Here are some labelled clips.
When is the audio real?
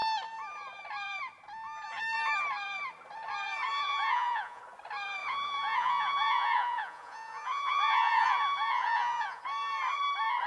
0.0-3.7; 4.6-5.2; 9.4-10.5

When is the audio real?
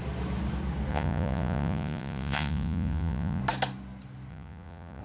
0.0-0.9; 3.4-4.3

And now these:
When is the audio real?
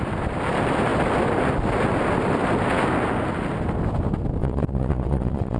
0.0-4.4